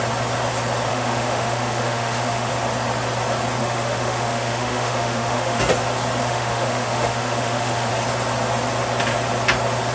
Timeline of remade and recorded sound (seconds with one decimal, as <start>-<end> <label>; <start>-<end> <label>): 0.0-0.9 recorded; 0.9-2.5 remade; 2.5-3.6 recorded; 3.6-5.6 remade; 5.6-6.2 recorded; 6.2-7.9 remade; 7.9-9.9 recorded